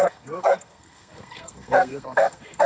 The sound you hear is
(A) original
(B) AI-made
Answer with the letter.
B